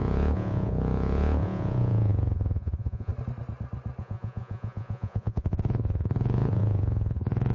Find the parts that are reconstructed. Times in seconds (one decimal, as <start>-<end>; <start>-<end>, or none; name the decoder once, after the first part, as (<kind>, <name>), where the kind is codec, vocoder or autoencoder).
0.0-3.1 (vocoder, Vocos); 4.0-7.5